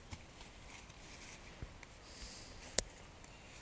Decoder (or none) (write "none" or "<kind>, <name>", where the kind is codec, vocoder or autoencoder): none